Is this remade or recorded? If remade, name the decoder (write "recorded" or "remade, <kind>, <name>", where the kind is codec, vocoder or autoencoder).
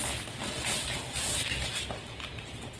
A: recorded